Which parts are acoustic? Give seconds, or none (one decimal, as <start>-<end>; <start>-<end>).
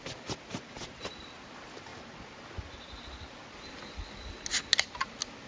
0.0-5.5